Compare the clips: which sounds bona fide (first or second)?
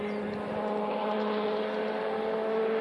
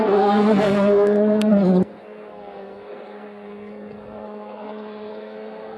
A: first